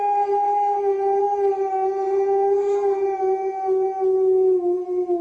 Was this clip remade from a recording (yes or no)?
no